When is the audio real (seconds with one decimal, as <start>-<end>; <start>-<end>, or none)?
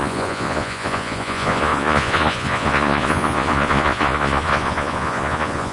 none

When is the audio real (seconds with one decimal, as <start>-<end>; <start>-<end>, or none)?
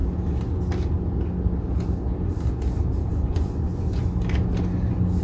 0.0-3.1; 4.0-5.2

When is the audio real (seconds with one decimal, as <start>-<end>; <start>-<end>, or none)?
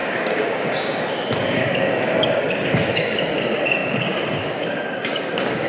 none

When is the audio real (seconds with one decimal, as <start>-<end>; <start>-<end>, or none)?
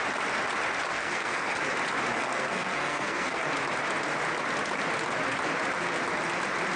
0.0-0.9; 1.6-2.1; 3.4-6.8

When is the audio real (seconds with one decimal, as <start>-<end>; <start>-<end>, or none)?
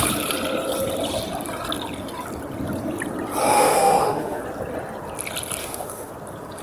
0.0-3.5; 4.4-5.6; 6.1-6.6